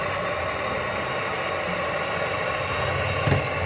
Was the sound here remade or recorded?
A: recorded